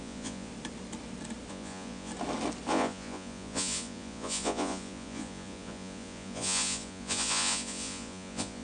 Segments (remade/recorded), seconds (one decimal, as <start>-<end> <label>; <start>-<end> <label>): 0.0-0.5 remade; 0.5-1.5 recorded; 1.5-2.1 remade; 2.1-2.7 recorded; 2.7-8.6 remade

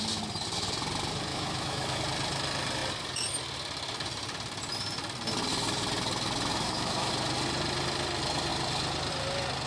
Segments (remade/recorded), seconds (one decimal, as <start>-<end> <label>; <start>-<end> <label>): 0.0-1.3 recorded; 1.3-2.0 remade; 2.0-6.5 recorded; 6.5-7.1 remade; 7.1-9.7 recorded

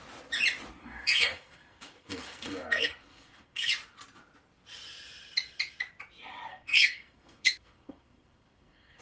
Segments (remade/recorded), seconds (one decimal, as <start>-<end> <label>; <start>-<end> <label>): 0.0-0.8 recorded; 0.8-3.7 remade; 3.7-6.5 recorded; 6.5-9.0 remade

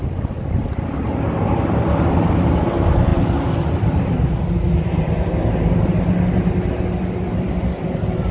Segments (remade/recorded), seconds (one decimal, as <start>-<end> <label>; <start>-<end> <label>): 0.0-8.3 recorded

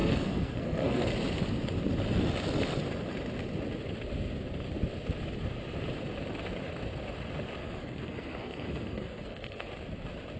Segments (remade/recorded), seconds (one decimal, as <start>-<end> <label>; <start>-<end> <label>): 0.0-1.1 remade; 1.1-7.6 recorded; 7.6-9.7 remade; 9.7-10.4 recorded

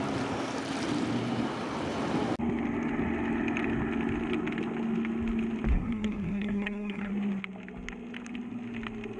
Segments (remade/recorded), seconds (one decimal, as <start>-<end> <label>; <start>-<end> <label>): 0.0-5.7 recorded; 5.7-7.1 remade; 7.1-9.2 recorded

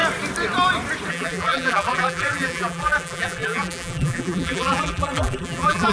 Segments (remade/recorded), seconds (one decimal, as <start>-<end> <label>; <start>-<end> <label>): 0.0-1.1 recorded; 1.1-5.9 remade